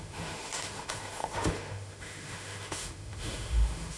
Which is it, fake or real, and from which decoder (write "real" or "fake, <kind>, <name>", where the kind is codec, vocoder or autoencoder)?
fake, autoencoder, DAC-VAE